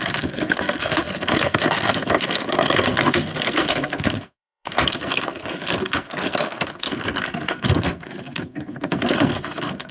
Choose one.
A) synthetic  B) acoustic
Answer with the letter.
A